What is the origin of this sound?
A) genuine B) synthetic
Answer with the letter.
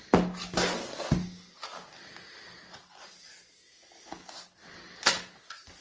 A